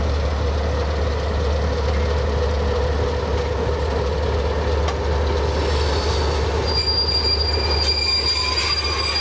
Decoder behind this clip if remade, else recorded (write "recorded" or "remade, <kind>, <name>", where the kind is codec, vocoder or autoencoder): recorded